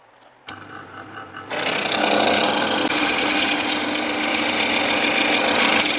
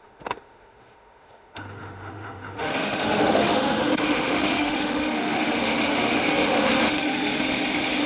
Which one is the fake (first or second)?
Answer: second